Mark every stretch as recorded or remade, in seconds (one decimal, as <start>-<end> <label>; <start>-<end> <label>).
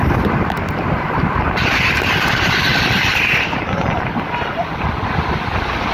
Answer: 0.0-2.7 recorded; 2.7-4.9 remade; 4.9-5.9 recorded